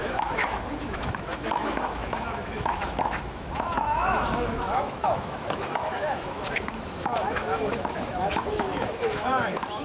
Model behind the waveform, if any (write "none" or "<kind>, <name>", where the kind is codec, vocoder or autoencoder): autoencoder, DAC-VAE